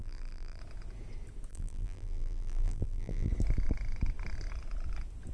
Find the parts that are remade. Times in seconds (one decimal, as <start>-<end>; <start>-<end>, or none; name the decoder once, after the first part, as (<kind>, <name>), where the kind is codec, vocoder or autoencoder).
0.0-0.6 (vocoder, BigVGAN v2); 1.5-3.3

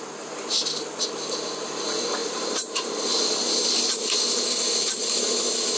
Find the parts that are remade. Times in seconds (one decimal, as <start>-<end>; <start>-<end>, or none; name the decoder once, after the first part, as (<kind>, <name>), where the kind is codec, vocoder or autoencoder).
2.2-3.0 (vocoder, BigVGAN v2)